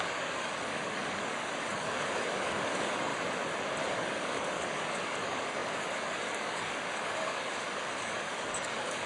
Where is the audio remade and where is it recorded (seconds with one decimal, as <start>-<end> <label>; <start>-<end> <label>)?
0.0-3.1 remade; 3.1-3.8 recorded; 3.8-9.1 remade